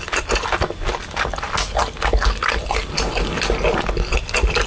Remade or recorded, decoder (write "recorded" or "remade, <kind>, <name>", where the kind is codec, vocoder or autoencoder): recorded